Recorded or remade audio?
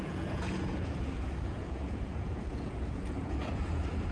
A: remade